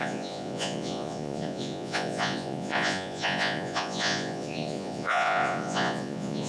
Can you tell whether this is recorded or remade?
remade